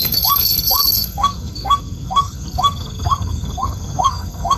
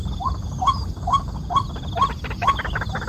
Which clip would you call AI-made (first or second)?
first